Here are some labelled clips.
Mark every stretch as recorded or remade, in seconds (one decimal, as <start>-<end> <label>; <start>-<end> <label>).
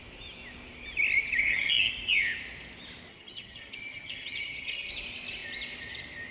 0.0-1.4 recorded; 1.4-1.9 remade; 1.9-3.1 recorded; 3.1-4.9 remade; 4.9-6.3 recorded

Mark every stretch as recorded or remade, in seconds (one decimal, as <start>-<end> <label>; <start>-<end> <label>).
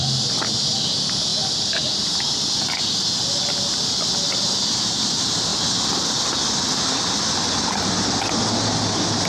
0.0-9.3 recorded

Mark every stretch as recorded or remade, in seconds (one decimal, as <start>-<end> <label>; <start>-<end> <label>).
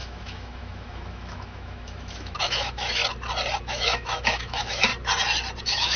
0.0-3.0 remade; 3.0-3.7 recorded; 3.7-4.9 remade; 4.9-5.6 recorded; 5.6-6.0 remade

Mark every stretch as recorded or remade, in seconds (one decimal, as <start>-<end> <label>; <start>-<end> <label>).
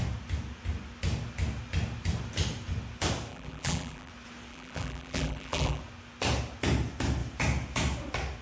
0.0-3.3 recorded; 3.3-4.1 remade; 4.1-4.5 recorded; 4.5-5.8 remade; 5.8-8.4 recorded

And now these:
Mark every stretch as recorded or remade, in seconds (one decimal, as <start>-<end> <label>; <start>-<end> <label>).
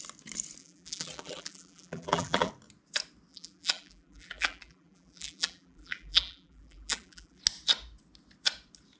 0.0-0.6 recorded; 0.6-2.5 remade; 2.5-3.3 recorded; 3.3-7.4 remade; 7.4-9.0 recorded